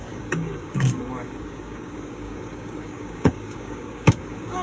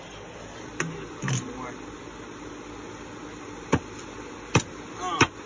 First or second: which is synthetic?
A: first